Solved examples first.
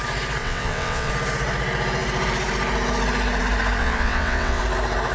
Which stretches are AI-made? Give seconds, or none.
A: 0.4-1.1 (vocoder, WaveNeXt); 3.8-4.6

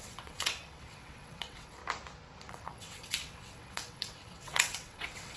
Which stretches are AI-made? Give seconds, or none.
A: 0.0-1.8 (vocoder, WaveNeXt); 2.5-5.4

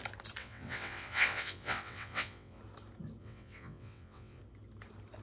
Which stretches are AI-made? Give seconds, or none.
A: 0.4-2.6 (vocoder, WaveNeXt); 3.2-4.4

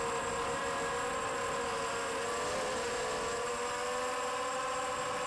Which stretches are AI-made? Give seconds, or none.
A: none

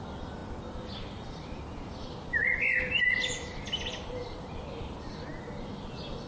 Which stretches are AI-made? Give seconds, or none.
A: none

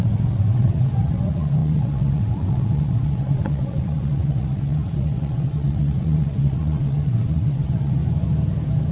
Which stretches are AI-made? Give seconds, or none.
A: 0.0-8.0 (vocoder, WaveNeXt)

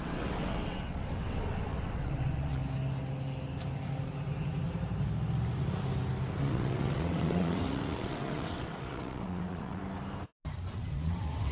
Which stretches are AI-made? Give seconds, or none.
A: 0.0-2.6 (vocoder, WaveNeXt); 6.4-9.8; 10.7-11.5